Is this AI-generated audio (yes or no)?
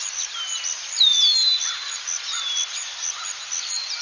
no